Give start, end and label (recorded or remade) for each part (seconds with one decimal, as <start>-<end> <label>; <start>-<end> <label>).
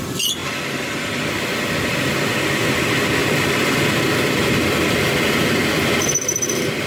0.0-3.2 recorded; 3.2-5.8 remade; 5.8-6.9 recorded